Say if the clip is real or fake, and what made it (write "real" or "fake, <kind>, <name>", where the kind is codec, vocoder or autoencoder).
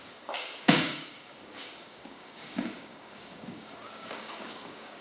fake, codec, DAC